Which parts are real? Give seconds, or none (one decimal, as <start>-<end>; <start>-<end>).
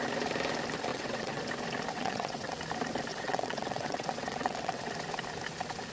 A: 0.0-0.9; 1.4-1.9; 2.6-3.1; 4.9-5.9